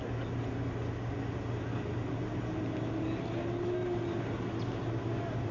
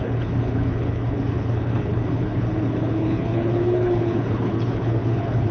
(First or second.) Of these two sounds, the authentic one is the first